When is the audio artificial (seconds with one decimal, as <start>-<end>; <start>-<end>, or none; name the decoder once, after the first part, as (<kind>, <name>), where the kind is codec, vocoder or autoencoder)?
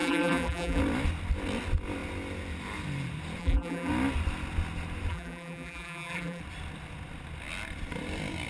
0.0-0.8 (vocoder, BigVGAN v2); 3.4-3.9; 5.1-6.4